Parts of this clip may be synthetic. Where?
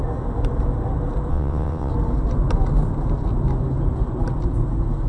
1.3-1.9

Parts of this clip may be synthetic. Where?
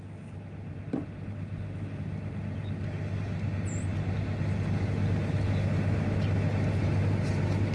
none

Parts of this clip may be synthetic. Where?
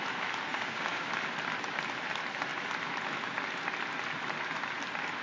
0.5-1.1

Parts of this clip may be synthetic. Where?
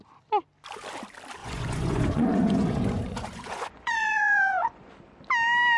1.4-4.9